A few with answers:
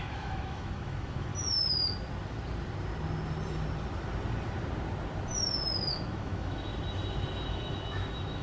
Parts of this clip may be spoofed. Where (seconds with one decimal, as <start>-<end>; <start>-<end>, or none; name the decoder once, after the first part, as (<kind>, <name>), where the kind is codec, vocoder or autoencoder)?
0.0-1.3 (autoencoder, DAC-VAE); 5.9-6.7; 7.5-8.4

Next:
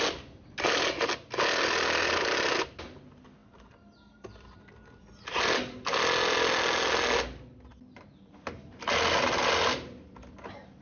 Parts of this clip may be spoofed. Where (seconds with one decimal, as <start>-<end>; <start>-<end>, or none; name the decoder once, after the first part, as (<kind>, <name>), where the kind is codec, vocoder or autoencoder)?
none

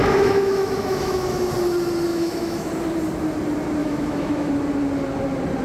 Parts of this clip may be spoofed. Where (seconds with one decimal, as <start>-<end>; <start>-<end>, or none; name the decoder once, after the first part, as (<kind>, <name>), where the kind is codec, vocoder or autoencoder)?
0.0-1.5 (autoencoder, DAC-VAE); 2.1-2.7; 3.8-4.5